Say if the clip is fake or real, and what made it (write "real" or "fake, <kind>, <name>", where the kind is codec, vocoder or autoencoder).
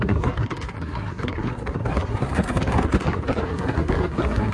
fake, codec, SNAC